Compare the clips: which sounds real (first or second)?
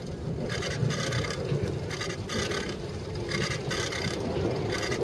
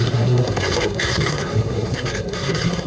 first